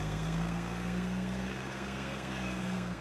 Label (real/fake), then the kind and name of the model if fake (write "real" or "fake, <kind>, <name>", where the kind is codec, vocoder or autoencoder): fake, codec, SNAC